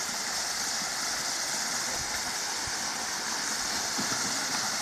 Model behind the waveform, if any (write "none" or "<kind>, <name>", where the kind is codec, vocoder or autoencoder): none